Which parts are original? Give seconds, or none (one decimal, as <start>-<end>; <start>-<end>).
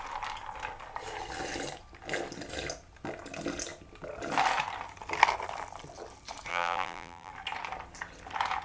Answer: 0.0-6.5; 7.3-8.6